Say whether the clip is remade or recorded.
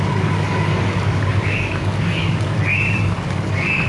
remade